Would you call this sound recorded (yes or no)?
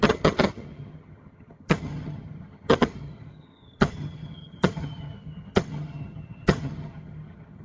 no